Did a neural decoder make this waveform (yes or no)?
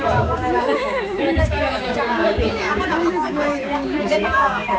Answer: yes